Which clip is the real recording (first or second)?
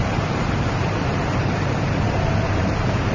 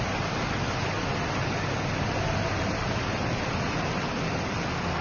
second